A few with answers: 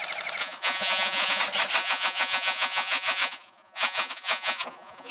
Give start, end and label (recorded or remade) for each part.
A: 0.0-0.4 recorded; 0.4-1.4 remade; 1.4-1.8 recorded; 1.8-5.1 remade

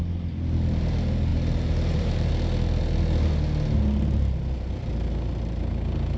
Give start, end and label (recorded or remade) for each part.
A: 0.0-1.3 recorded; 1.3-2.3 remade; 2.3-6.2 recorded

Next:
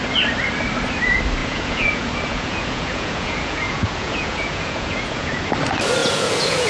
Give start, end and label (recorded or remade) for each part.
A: 0.0-1.4 recorded; 1.4-5.4 remade; 5.4-6.0 recorded; 6.0-6.7 remade

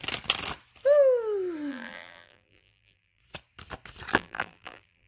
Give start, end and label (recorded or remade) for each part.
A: 0.0-1.7 recorded; 1.7-3.2 remade; 3.2-4.1 recorded; 4.1-5.1 remade

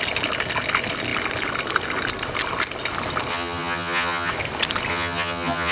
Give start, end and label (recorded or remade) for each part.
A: 0.0-3.3 recorded; 3.3-4.3 remade; 4.3-4.9 recorded; 4.9-5.7 remade

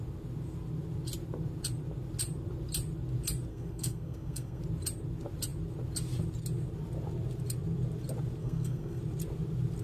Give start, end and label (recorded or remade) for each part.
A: 0.0-3.5 recorded; 3.5-4.6 remade; 4.6-8.4 recorded; 8.4-9.0 remade; 9.0-9.8 recorded